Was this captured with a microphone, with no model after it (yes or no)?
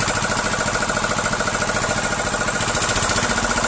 yes